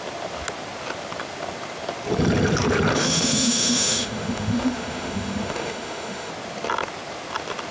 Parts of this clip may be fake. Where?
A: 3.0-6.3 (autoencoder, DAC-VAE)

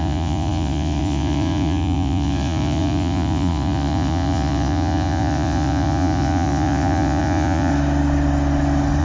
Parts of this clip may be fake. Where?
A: 0.0-7.7 (vocoder, Vocos)

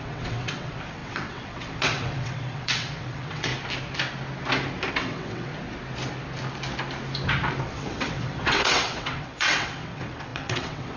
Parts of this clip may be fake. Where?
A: 0.0-3.5 (vocoder, WaveNeXt); 4.9-5.5; 7.6-11.0

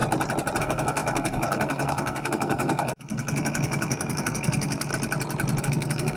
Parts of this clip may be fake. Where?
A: 0.6-4.9 (codec, SNAC); 5.6-6.2

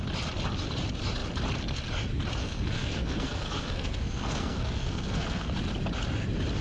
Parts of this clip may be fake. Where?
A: 2.4-5.5 (codec, SNAC)

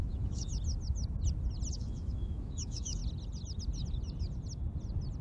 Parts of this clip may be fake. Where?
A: 0.0-0.5 (autoencoder, DAC-VAE); 1.7-3.0